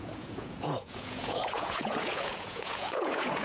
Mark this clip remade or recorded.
remade